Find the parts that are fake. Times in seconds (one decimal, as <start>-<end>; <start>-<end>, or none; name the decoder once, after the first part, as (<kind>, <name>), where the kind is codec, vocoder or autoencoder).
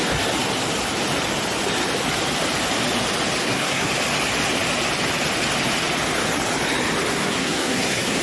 3.4-3.9 (codec, SNAC); 7.1-8.2